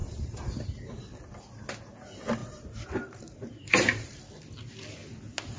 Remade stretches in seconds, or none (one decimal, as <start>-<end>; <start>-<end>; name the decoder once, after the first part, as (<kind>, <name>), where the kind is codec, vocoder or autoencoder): 0.0-0.9 (vocoder, BigVGAN v2); 2.4-4.2